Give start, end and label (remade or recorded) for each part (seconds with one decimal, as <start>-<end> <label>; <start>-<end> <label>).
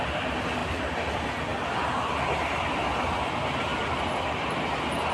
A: 0.0-5.1 recorded